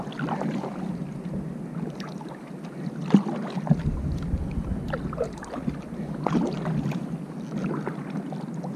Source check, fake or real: real